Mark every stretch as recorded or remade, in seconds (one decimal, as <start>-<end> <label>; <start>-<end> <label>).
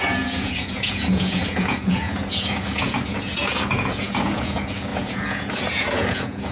0.0-6.5 remade